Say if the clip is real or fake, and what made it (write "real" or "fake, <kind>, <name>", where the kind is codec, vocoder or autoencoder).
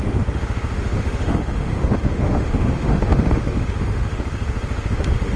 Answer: fake, autoencoder, DAC-VAE